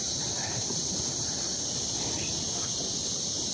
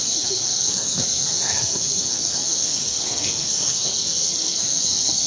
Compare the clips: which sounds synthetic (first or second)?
second